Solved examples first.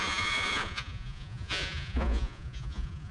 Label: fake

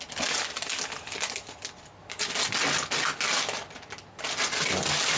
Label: real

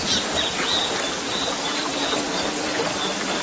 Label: real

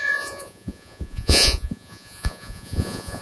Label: fake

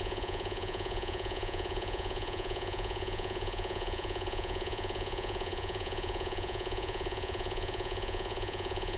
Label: fake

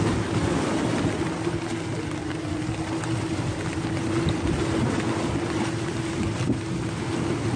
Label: real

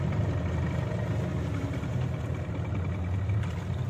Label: real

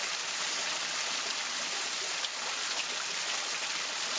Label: real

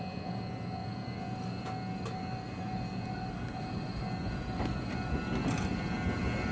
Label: real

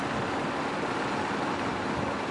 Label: real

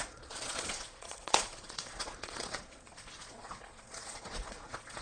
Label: fake